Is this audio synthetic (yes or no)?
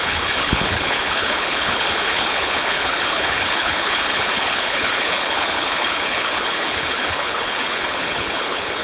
yes